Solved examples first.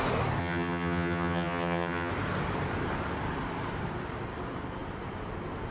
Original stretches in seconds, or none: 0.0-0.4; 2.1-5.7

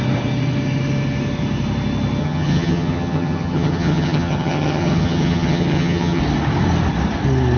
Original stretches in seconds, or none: 0.0-2.2; 6.2-7.6

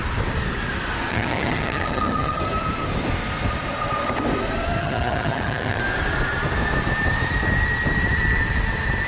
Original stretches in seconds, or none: 0.0-1.1; 2.4-4.8; 5.8-9.1